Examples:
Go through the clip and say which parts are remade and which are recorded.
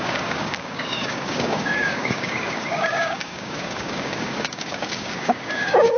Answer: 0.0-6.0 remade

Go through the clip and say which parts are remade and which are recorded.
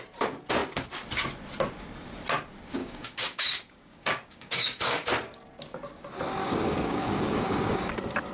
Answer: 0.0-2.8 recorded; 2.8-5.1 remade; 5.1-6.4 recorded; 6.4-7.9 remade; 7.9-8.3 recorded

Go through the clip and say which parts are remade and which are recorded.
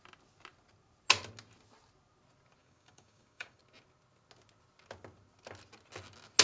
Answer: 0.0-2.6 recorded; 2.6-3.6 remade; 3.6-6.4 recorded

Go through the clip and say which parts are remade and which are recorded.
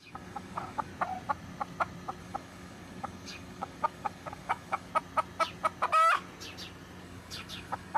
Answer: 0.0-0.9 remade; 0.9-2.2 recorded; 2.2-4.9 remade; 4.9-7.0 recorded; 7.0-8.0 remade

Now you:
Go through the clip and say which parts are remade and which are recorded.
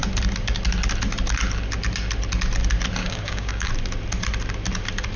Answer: 0.0-3.0 recorded; 3.0-3.7 remade; 3.7-5.2 recorded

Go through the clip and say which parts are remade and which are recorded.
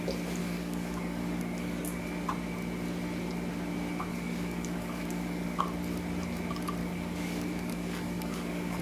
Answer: 0.0-0.4 recorded; 0.4-2.0 remade; 2.0-4.1 recorded; 4.1-5.6 remade; 5.6-6.8 recorded; 6.8-8.8 remade